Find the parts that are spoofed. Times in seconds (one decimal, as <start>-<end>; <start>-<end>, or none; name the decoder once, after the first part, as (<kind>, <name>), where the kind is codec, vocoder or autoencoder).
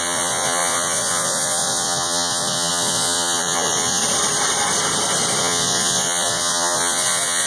0.0-4.0 (vocoder, Vocos); 5.4-7.5